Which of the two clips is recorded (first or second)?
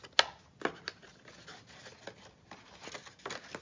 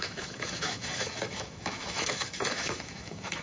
first